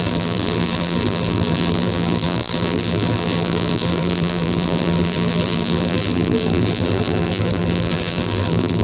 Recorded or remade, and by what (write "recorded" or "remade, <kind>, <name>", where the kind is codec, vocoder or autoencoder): remade, vocoder, BigVGAN v2